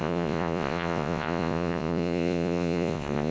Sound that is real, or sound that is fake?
fake